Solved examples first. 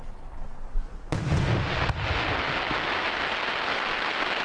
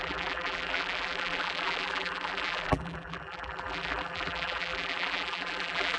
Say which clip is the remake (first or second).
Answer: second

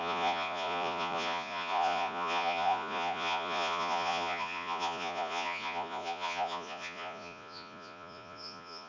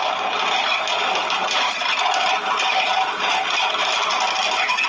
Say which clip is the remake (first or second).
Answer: first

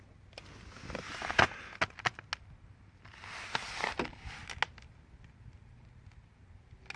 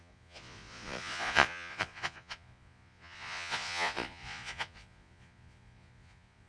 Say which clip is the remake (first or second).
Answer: second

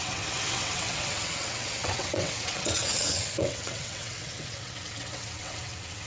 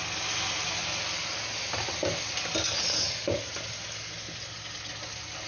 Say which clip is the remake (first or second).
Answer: first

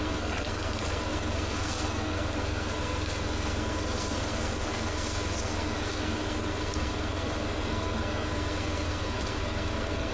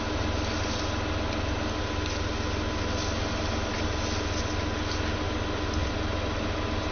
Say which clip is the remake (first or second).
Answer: first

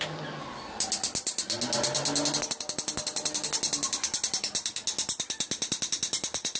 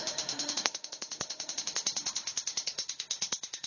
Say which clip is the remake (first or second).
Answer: second